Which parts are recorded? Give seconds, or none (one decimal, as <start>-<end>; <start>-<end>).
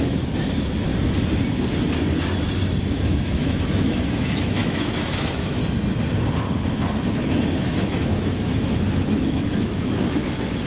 0.9-2.8; 5.6-7.1